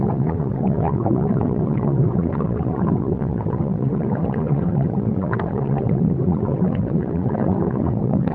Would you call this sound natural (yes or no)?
no